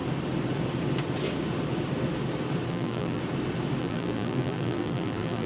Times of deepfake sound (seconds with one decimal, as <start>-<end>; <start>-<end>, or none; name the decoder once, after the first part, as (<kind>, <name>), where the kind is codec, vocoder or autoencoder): 2.7-3.2 (vocoder, BigVGAN v2); 3.8-5.5